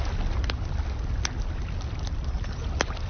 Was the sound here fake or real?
real